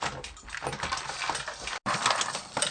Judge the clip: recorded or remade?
recorded